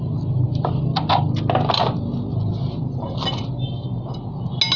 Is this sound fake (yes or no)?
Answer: no